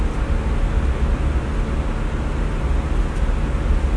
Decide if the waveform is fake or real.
real